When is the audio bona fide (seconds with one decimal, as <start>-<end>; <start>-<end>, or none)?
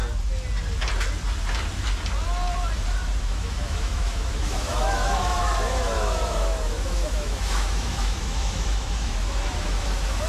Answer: 0.0-3.2